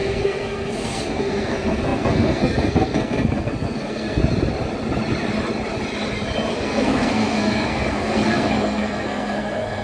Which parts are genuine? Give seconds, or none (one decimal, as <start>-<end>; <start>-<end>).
4.2-6.5